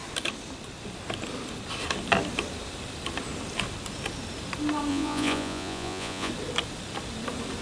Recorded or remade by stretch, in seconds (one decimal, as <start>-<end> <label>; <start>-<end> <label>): 0.0-4.9 recorded; 4.9-6.3 remade; 6.3-7.6 recorded